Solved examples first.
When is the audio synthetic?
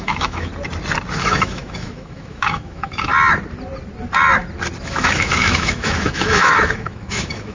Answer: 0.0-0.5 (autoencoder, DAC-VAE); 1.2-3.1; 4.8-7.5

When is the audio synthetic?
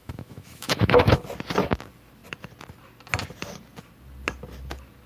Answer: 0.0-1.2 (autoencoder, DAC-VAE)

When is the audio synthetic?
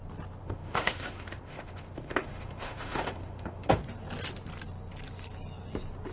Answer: 0.4-3.7 (autoencoder, DAC-VAE)